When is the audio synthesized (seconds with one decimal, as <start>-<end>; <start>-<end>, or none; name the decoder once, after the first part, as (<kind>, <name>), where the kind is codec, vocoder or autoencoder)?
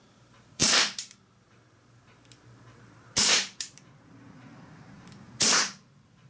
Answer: 0.0-6.3 (vocoder, BigVGAN v2)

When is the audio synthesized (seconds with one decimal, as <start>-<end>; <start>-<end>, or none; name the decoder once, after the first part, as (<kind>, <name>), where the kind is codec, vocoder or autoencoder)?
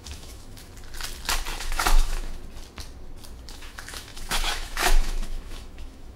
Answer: 0.0-0.7 (autoencoder, DAC-VAE); 1.6-2.4; 3.5-6.2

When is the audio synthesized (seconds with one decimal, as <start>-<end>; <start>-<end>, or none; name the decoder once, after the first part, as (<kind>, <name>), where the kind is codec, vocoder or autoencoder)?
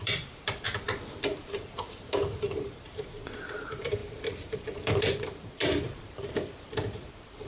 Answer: 0.0-7.5 (vocoder, BigVGAN v2)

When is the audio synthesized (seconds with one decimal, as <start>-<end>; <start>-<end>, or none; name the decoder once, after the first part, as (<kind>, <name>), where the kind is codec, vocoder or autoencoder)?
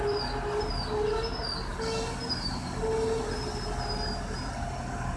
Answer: none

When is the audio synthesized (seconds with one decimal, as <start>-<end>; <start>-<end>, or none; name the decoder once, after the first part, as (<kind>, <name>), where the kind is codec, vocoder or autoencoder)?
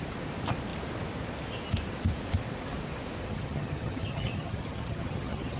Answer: 3.3-5.6 (vocoder, HiFi-GAN)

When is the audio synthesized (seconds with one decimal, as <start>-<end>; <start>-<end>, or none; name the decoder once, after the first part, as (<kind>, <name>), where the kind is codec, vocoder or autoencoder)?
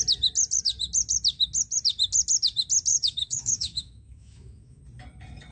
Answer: 2.9-4.8 (autoencoder, DAC-VAE)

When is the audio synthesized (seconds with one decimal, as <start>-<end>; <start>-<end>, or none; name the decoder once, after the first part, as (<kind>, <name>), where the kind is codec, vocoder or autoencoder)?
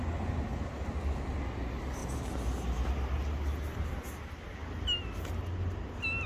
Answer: none